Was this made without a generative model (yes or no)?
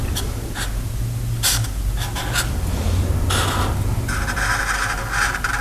yes